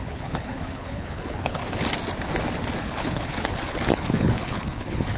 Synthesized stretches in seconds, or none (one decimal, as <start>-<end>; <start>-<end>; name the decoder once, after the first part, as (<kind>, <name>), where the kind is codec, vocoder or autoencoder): 0.0-1.6 (codec, HILCodec); 2.8-5.2